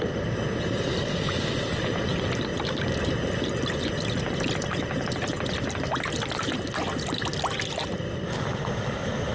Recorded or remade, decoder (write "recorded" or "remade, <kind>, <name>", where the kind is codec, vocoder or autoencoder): recorded